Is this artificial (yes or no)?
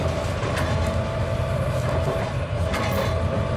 no